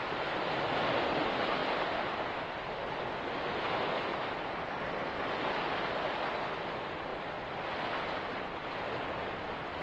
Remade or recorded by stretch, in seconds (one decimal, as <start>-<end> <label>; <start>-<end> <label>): 0.0-9.8 recorded